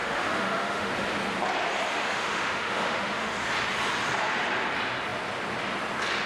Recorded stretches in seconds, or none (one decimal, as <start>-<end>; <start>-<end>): 0.9-1.9; 3.3-6.3